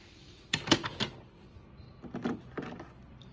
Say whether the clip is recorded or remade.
recorded